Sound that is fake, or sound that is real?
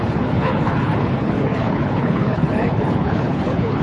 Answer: fake